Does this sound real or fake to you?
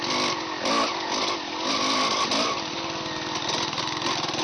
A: real